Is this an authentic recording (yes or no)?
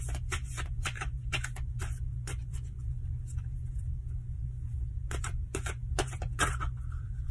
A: no